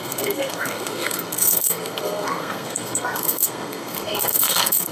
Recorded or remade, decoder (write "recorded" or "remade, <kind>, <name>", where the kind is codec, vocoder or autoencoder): remade, codec, SNAC